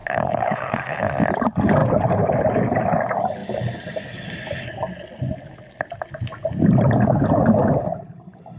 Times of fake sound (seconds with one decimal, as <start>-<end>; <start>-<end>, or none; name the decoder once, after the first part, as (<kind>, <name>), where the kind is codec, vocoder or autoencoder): 0.0-1.1 (codec, HILCodec)